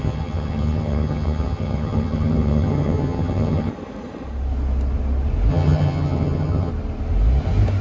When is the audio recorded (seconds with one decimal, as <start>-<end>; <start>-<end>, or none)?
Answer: 3.7-5.5; 6.7-7.8